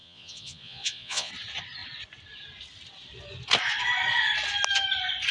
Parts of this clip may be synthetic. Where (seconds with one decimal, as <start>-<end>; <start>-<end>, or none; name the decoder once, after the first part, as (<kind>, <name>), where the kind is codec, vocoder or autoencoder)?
0.0-1.3 (vocoder, Vocos)